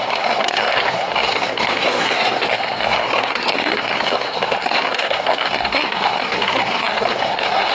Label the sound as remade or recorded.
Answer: remade